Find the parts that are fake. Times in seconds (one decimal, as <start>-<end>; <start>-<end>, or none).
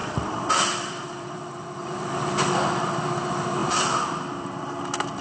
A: 0.0-3.1; 3.6-4.8